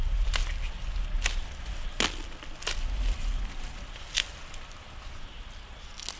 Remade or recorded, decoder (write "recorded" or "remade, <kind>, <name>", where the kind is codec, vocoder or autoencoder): recorded